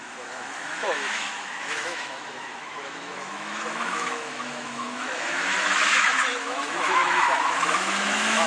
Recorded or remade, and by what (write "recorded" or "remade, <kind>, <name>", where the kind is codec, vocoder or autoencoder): remade, autoencoder, DAC-VAE